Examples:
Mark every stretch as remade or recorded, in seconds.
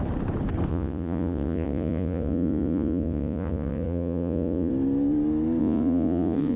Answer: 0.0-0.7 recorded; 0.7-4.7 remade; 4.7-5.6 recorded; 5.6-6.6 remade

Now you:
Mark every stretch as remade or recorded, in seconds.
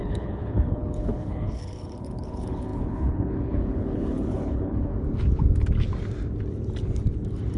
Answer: 0.0-4.9 remade; 4.9-7.6 recorded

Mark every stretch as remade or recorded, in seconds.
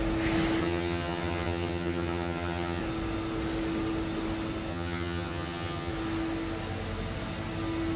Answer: 0.0-0.6 recorded; 0.6-2.8 remade; 2.8-4.7 recorded; 4.7-5.9 remade; 5.9-8.0 recorded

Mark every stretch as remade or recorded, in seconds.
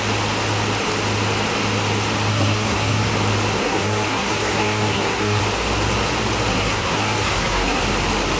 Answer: 0.0-2.3 recorded; 2.3-3.1 remade; 3.1-3.6 recorded; 3.6-5.4 remade; 5.4-6.5 recorded; 6.5-7.8 remade; 7.8-8.4 recorded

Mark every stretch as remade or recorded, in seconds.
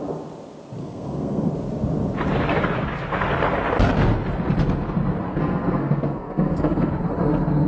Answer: 0.0-0.8 recorded; 0.8-1.5 remade; 1.5-5.3 recorded; 5.3-6.9 remade; 6.9-7.7 recorded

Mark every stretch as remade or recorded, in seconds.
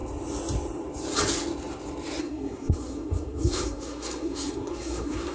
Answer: 0.0-2.2 recorded; 2.2-5.3 remade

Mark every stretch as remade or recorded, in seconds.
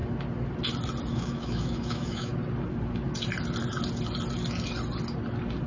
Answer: 0.0-1.1 recorded; 1.1-2.3 remade; 2.3-5.7 recorded